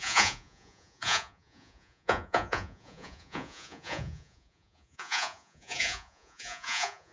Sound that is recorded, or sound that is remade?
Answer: remade